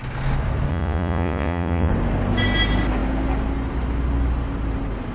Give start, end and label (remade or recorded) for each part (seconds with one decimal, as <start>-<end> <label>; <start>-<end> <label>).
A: 0.0-0.7 recorded; 0.7-1.9 remade; 1.9-5.1 recorded